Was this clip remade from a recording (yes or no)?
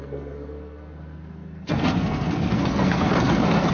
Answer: yes